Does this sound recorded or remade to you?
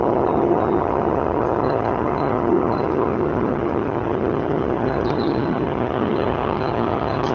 remade